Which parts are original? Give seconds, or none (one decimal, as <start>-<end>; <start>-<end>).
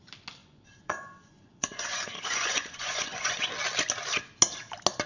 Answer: 0.0-0.4; 3.5-5.1